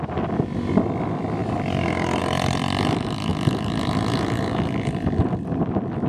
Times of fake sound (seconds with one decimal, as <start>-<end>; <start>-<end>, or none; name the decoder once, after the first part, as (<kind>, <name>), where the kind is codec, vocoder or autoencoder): 1.4-2.2 (vocoder, BigVGAN v2); 3.3-6.1